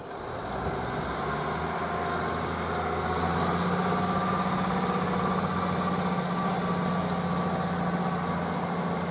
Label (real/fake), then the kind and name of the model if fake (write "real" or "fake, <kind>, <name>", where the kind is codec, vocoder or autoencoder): real